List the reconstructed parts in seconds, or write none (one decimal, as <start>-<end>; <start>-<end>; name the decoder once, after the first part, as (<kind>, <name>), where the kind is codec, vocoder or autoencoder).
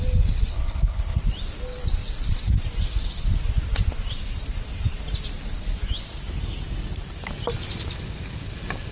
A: 0.5-1.2 (codec, HILCodec)